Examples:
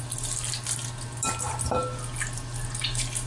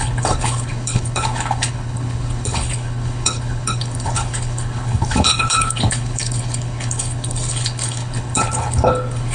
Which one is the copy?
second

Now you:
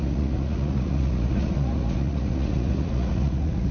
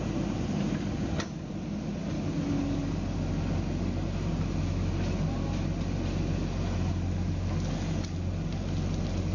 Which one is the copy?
first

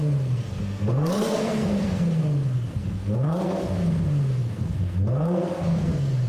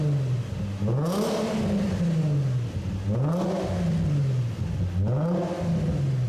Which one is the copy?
first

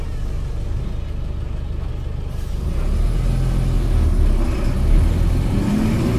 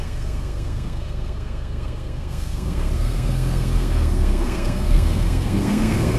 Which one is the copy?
second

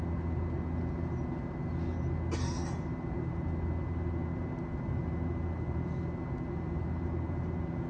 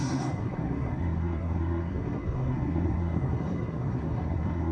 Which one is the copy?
second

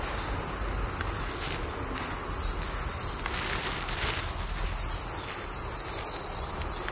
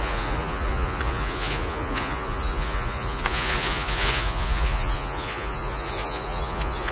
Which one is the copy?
second